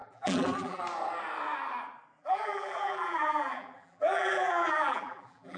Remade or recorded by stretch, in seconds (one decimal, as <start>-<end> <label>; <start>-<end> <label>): 0.0-0.8 remade; 0.8-2.2 recorded; 2.2-5.6 remade